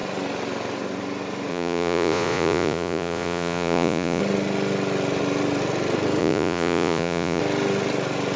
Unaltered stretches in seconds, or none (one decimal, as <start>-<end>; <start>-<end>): 0.0-1.5; 4.2-6.2; 7.4-8.4